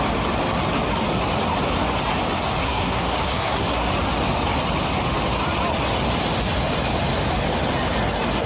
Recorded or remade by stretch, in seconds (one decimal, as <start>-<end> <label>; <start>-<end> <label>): 0.0-2.6 recorded; 2.6-3.9 remade; 3.9-8.5 recorded